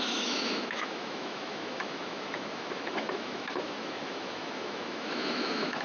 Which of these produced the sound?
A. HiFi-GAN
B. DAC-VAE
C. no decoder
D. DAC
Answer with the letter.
B